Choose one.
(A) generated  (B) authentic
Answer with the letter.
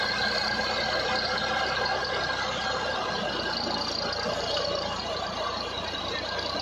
B